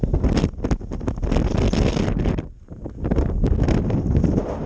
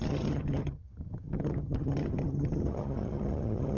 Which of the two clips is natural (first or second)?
first